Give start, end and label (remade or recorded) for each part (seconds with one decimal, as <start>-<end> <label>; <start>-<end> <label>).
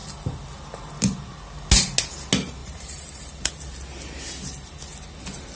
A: 0.0-2.6 recorded; 2.6-3.5 remade; 3.5-5.6 recorded